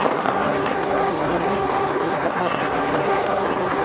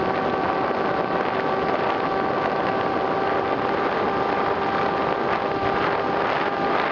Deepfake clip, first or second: first